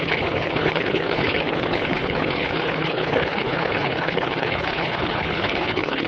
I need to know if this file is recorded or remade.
remade